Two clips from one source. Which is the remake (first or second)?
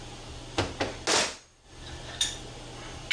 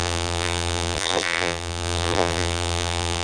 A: second